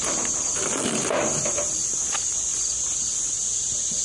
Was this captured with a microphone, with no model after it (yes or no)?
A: yes